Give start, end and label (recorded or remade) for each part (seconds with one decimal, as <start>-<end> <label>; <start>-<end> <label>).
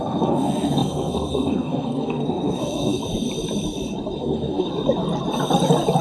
0.0-3.0 remade; 3.0-4.2 recorded; 4.2-4.7 remade; 4.7-6.0 recorded